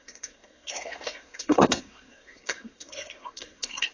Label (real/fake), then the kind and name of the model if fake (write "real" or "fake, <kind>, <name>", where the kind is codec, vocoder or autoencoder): fake, codec, SNAC